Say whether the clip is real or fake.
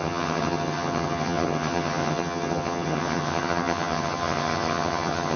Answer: fake